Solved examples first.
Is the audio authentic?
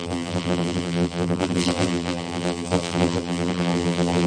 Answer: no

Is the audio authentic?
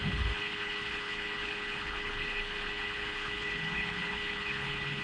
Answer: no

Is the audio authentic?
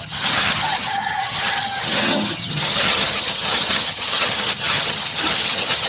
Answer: no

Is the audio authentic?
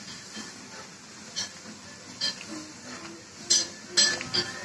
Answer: yes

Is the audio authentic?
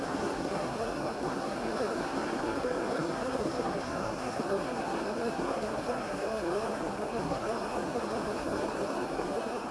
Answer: no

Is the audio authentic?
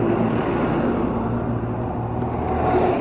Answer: yes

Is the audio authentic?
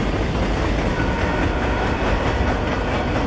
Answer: yes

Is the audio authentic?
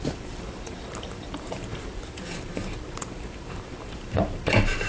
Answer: no